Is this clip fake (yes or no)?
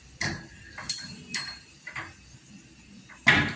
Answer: no